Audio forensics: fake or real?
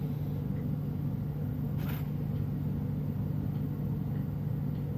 real